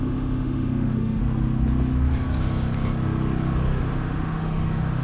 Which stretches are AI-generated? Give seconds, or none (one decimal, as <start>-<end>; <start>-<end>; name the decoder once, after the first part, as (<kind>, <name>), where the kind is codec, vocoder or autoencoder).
0.0-1.2 (autoencoder, DAC-VAE); 3.8-5.0